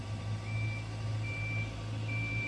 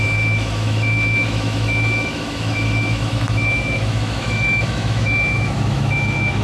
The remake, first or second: second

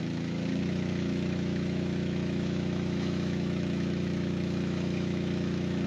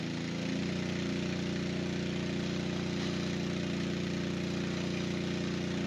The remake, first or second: first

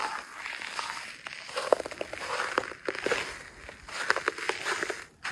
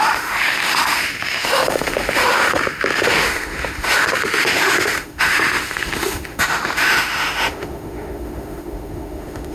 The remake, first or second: second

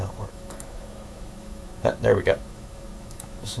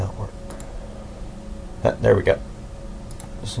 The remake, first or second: first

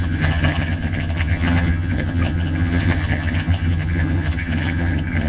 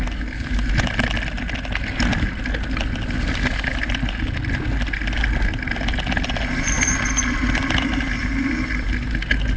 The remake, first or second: first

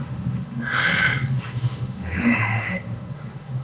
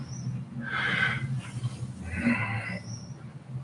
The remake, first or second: first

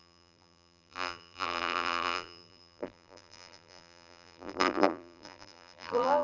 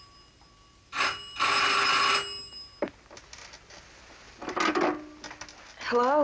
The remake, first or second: first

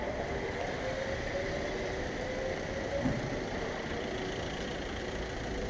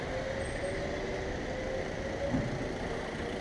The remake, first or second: first